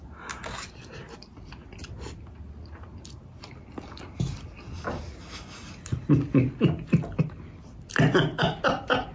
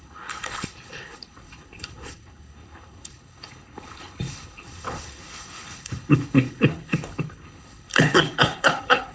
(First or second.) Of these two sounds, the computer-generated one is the second